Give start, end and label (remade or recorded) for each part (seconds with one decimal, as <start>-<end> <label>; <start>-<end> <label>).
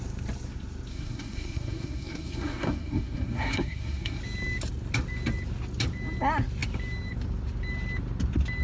0.0-0.9 recorded; 0.9-4.2 remade; 4.2-8.6 recorded